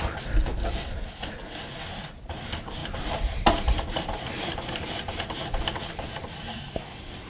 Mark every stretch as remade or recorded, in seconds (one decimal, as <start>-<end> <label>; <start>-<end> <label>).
0.0-2.8 recorded; 2.8-6.8 remade; 6.8-7.3 recorded